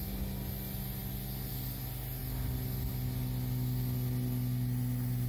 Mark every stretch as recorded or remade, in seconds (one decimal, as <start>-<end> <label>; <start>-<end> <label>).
0.0-5.3 recorded